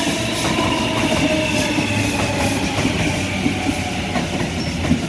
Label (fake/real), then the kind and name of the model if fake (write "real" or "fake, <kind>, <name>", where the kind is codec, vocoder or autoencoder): real